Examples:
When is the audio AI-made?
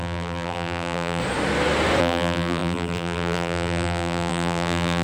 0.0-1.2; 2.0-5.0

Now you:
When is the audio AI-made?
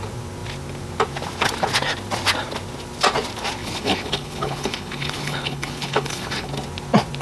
3.6-6.5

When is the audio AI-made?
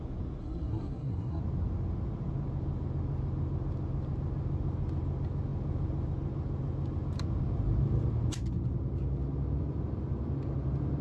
0.4-1.4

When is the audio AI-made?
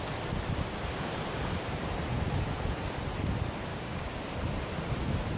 3.7-4.3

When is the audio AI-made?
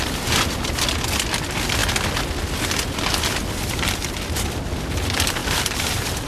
5.4-6.3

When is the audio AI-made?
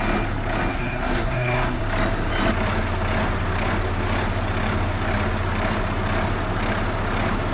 0.7-1.8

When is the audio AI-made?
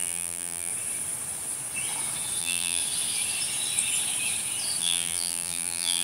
0.0-0.7; 2.4-2.8; 4.8-6.0